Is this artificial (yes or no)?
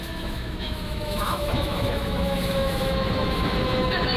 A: yes